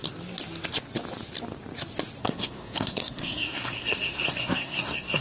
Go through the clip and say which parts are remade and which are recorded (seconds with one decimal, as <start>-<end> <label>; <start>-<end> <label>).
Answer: 0.0-2.2 recorded; 2.2-5.2 remade